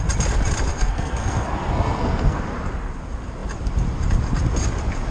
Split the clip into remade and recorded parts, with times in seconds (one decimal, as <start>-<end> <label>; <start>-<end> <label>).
0.0-0.7 recorded; 0.7-2.4 remade; 2.4-5.1 recorded